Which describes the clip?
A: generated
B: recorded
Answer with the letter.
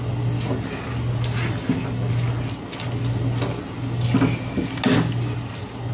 B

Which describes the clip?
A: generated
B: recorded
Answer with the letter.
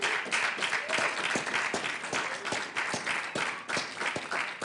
B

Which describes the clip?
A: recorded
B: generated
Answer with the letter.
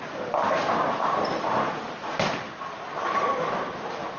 A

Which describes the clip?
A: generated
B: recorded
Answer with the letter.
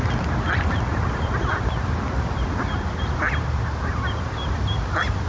B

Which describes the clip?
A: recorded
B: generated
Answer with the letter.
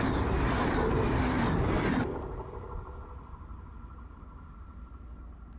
A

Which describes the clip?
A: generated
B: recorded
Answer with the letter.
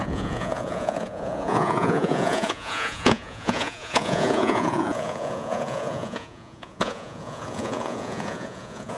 A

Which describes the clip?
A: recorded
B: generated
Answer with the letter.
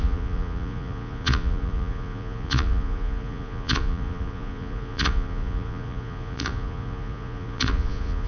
B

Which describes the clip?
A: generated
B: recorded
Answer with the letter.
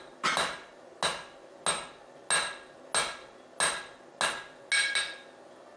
B